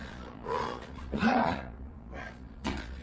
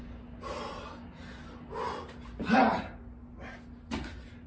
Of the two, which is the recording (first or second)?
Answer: second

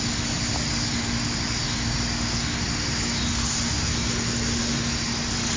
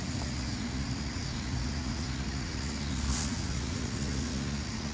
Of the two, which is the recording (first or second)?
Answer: first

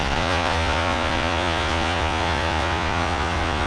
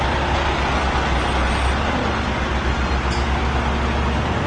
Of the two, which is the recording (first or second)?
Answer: second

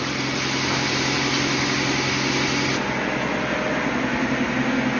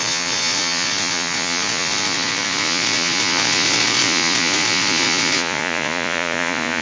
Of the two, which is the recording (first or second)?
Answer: first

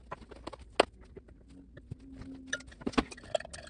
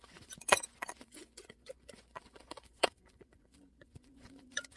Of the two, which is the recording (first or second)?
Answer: first